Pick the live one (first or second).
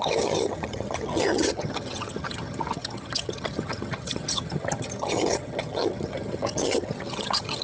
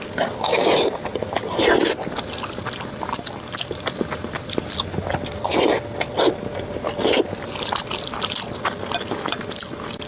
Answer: second